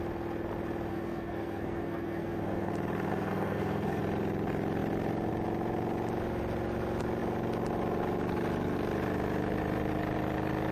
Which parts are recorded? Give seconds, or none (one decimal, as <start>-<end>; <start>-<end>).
0.0-0.9; 2.7-3.1; 4.0-10.7

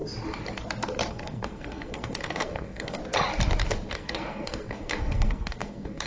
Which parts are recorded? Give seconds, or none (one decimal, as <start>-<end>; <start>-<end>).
0.0-1.1; 3.0-3.9

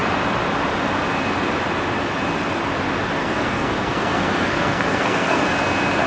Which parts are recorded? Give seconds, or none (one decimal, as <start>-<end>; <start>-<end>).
0.0-3.2; 5.4-6.1

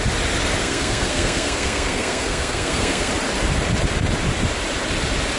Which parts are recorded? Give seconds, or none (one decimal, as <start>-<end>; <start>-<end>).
0.0-0.6; 3.1-5.4

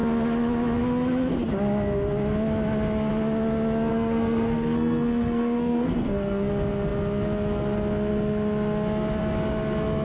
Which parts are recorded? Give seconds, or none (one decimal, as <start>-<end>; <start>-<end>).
0.0-3.9; 6.5-10.0